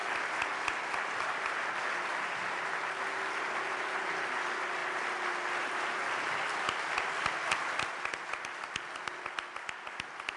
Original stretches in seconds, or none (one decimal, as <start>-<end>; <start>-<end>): 0.0-10.4